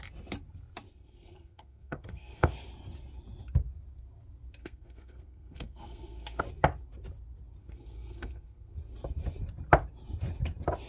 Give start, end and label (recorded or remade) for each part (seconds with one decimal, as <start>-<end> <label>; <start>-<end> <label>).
0.0-0.9 recorded; 0.9-2.5 remade; 2.5-4.6 recorded; 4.6-6.4 remade; 6.4-7.6 recorded; 7.6-8.8 remade; 8.8-10.9 recorded